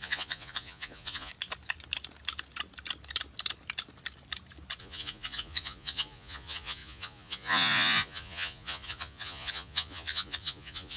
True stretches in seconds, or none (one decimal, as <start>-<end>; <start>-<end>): 1.3-4.8